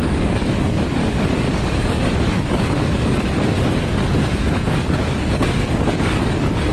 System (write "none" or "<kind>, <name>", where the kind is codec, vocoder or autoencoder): codec, DAC